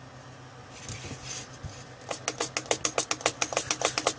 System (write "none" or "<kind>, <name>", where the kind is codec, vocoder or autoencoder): none